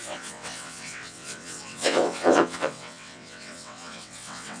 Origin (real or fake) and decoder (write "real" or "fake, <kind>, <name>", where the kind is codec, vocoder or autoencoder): fake, vocoder, WaveNeXt